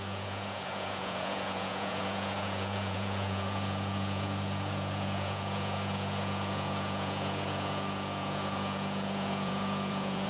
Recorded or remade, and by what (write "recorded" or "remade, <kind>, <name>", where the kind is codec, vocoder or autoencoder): remade, vocoder, Vocos